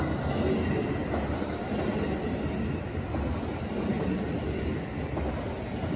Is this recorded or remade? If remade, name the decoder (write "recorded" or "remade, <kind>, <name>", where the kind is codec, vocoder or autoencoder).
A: recorded